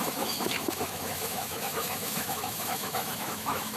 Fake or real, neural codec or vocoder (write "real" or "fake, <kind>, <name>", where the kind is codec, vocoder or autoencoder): fake, autoencoder, DAC-VAE